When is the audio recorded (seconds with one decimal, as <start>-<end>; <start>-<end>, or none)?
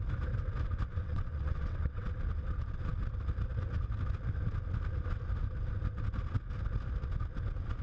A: 0.0-0.9; 2.1-7.8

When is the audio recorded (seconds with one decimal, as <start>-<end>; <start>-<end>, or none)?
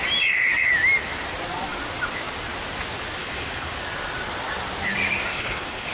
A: 0.0-3.2; 3.7-5.3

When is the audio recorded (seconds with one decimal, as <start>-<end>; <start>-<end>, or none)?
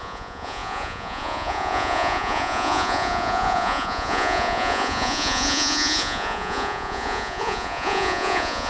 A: none